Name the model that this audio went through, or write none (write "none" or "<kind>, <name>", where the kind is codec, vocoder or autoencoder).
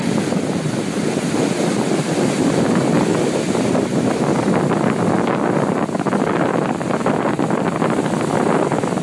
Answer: none